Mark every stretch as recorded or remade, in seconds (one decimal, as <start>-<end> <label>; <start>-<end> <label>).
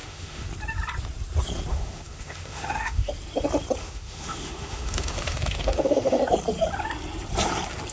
0.0-0.5 remade; 0.5-1.7 recorded; 1.7-3.1 remade; 3.1-3.8 recorded; 3.8-6.2 remade; 6.2-7.9 recorded